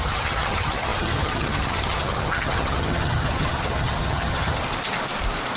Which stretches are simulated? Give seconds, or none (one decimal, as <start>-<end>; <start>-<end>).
0.0-4.6